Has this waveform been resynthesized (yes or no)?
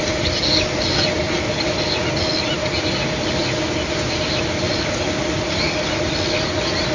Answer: no